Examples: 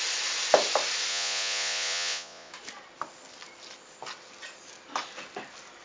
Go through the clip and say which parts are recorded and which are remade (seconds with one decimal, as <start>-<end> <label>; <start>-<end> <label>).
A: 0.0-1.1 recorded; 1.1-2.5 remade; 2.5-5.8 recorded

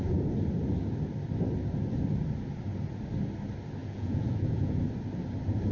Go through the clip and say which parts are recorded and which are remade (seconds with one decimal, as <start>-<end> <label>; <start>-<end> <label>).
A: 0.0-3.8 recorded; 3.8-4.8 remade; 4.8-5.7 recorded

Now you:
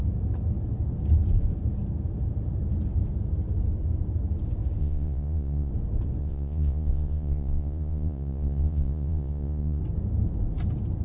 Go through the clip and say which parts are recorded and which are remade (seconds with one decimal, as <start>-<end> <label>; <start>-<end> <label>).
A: 0.0-4.8 recorded; 4.8-5.7 remade; 5.7-6.2 recorded; 6.2-9.8 remade; 9.8-11.0 recorded

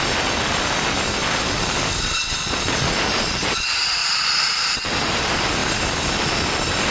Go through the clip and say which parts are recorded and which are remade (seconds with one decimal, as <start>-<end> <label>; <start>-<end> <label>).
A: 0.0-2.4 recorded; 2.4-3.0 remade; 3.0-4.0 recorded; 4.0-4.6 remade; 4.6-6.9 recorded

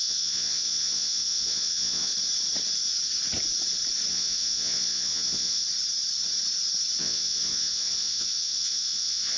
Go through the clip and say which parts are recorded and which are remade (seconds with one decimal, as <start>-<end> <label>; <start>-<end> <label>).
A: 0.0-2.1 remade; 2.1-4.1 recorded; 4.1-5.6 remade; 5.6-7.0 recorded; 7.0-9.4 remade